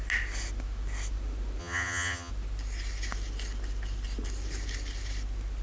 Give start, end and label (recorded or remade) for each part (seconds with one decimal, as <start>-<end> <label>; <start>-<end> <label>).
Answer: 0.0-1.6 recorded; 1.6-2.3 remade; 2.3-5.6 recorded